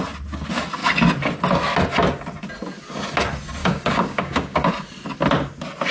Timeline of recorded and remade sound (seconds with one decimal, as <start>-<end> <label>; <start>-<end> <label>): 0.0-3.6 recorded; 3.6-4.7 remade; 4.7-5.9 recorded